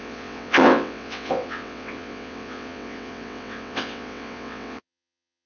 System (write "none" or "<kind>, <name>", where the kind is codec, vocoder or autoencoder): vocoder, WaveNeXt